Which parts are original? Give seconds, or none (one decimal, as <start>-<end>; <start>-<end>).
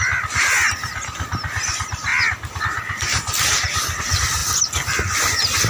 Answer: 0.0-5.7